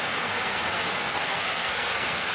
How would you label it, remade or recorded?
remade